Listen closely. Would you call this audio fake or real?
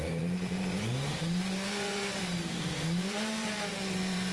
fake